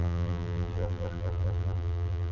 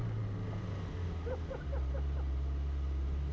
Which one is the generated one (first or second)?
first